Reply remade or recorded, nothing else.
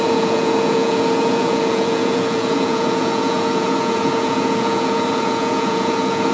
remade